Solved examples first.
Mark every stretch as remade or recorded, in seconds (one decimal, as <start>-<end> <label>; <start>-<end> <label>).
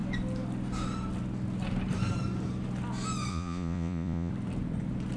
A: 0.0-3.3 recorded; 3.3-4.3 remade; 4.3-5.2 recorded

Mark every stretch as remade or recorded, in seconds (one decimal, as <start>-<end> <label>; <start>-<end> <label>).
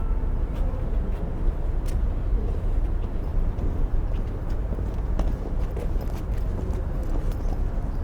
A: 0.0-3.3 recorded; 3.3-4.3 remade; 4.3-8.0 recorded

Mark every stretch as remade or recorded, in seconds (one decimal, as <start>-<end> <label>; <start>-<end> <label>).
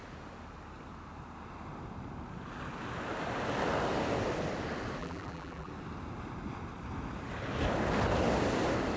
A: 0.0-5.0 recorded; 5.0-5.7 remade; 5.7-9.0 recorded